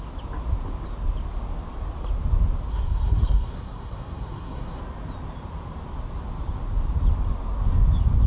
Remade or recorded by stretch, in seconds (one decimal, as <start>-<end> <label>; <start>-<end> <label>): 0.0-2.7 recorded; 2.7-4.8 remade; 4.8-8.3 recorded